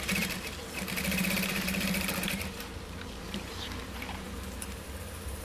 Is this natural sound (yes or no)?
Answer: no